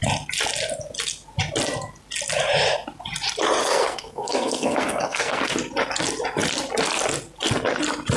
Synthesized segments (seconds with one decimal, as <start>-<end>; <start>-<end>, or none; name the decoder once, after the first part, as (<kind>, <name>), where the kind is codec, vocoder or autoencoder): 3.6-5.5 (codec, SNAC)